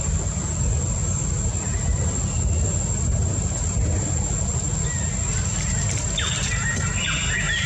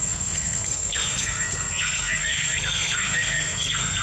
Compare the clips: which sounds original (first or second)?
first